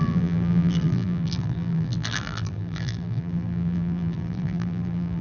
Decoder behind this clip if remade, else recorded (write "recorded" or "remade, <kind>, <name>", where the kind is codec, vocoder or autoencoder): remade, vocoder, BigVGAN v2